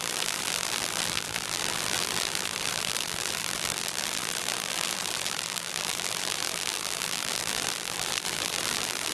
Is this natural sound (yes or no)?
no